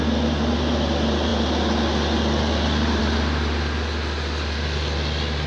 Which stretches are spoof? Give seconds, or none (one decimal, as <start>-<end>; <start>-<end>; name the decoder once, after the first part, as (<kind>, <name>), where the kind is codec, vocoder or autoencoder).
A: none